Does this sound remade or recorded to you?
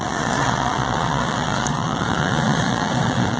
remade